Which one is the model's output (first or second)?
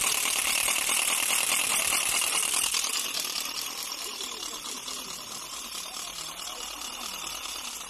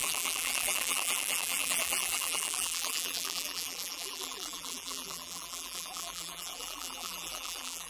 second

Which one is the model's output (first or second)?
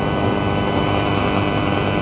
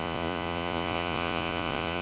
second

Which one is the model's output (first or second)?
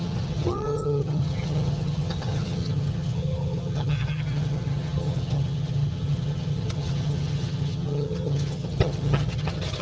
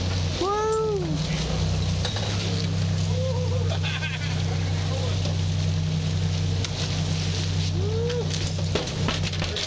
first